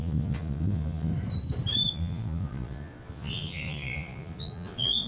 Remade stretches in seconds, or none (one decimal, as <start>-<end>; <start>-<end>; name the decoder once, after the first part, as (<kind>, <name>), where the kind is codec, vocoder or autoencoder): 0.0-1.1 (vocoder, Vocos); 1.9-5.1

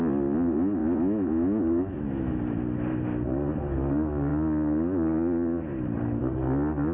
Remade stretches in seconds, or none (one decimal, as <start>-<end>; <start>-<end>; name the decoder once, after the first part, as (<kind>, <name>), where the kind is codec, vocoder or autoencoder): 0.8-2.4 (autoencoder, DAC-VAE)

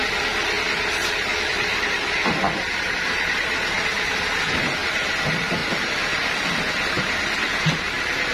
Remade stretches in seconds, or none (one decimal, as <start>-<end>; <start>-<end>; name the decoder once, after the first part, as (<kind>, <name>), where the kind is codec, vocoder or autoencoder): none

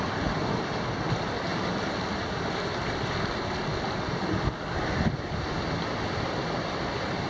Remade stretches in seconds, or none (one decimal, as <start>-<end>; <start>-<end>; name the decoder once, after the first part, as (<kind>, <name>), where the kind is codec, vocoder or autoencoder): none

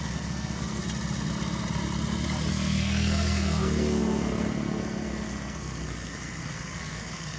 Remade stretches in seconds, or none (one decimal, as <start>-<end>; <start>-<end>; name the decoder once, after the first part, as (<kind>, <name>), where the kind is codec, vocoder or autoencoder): 0.0-0.8 (codec, SNAC); 2.5-7.4

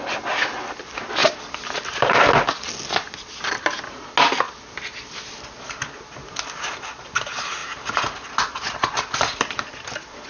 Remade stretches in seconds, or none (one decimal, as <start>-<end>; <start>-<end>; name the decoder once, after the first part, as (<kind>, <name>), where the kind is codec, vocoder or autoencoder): none

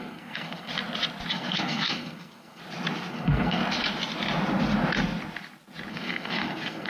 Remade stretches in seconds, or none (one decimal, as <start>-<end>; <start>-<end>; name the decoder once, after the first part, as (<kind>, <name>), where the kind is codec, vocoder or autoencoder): 0.0-0.7 (codec, SNAC); 1.3-2.6; 3.1-3.6; 5.9-6.9

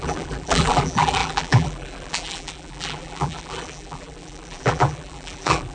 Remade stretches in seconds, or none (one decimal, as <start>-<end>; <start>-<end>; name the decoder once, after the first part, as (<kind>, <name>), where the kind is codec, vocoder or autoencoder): 0.0-5.7 (vocoder, BigVGAN v2)